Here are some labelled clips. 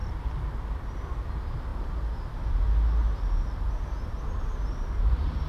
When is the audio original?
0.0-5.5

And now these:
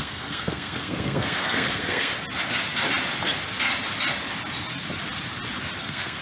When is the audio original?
2.1-5.8

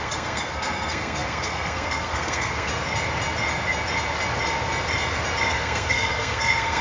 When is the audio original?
2.7-5.5